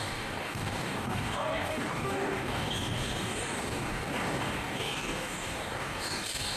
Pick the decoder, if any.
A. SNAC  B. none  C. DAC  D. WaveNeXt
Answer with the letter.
C